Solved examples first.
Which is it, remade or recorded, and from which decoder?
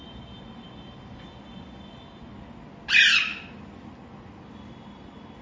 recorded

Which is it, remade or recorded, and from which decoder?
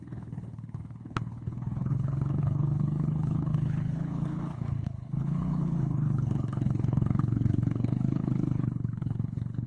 remade, codec, HILCodec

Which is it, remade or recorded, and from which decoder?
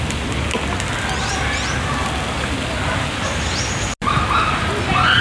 recorded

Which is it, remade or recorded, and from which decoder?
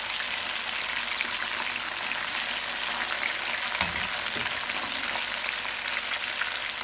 recorded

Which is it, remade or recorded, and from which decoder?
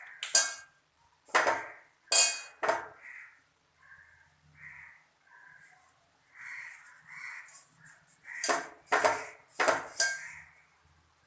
recorded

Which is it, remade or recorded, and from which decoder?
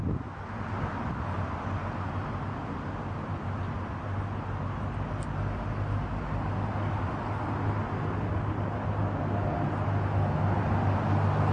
recorded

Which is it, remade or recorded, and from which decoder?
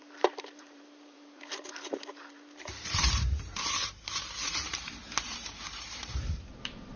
remade, vocoder, BigVGAN v2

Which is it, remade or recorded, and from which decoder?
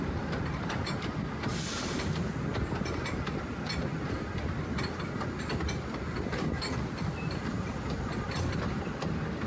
recorded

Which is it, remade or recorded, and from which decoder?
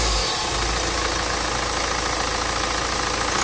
recorded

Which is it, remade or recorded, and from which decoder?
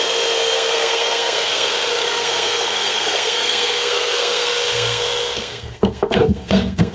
remade, codec, SNAC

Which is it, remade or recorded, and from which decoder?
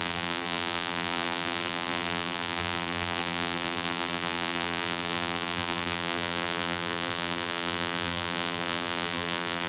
remade, vocoder, BigVGAN v2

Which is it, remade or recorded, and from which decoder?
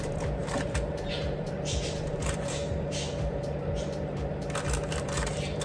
remade, vocoder, BigVGAN v2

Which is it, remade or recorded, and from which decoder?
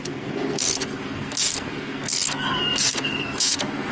remade, codec, SNAC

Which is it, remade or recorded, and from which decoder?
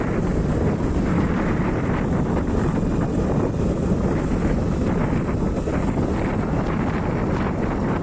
recorded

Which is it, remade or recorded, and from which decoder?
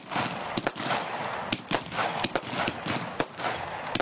recorded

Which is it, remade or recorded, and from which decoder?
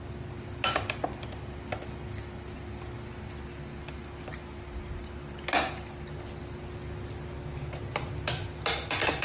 recorded